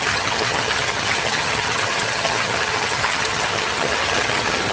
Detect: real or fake fake